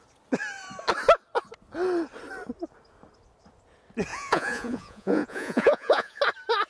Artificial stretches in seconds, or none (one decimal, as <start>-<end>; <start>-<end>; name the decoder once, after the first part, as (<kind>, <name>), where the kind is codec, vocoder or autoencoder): 4.1-6.2 (vocoder, Vocos)